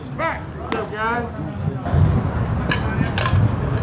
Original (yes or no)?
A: yes